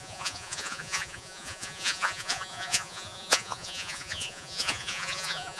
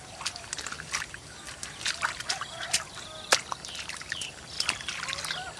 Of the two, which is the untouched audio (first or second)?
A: second